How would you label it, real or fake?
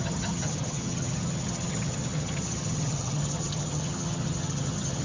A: fake